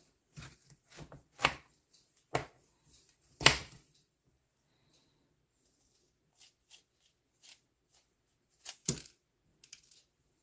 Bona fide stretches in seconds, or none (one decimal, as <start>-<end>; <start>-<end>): 0.0-0.6; 1.9-3.6; 4.3-10.4